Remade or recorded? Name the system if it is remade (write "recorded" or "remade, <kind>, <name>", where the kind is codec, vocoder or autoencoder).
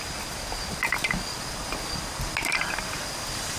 recorded